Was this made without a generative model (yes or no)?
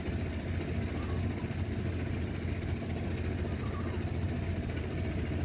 yes